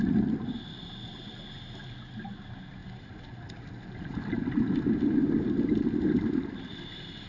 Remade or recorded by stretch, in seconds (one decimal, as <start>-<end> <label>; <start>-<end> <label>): 0.0-7.3 recorded

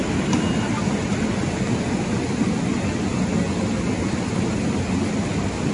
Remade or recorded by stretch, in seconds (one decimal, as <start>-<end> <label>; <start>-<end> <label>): 0.0-5.7 recorded

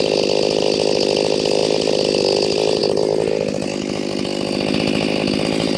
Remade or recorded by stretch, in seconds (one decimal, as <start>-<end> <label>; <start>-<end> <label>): 0.0-5.8 recorded